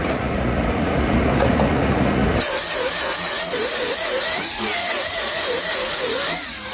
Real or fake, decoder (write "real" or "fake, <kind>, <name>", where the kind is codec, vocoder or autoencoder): fake, vocoder, Vocos